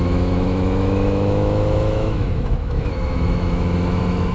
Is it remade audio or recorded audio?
remade